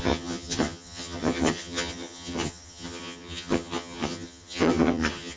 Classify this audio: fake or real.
fake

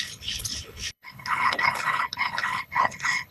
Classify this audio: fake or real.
fake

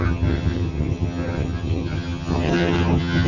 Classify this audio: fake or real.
fake